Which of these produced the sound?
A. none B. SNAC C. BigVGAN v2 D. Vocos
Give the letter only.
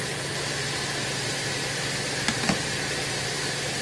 A